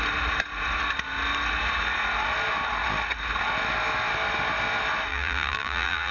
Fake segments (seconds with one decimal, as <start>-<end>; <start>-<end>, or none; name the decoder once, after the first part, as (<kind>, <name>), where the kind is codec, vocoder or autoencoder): 5.1-6.1 (vocoder, BigVGAN v2)